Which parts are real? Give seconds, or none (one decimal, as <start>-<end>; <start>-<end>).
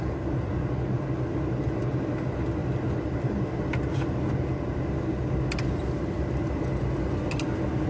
0.0-2.6; 3.3-7.9